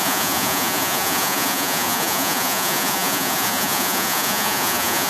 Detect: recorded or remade remade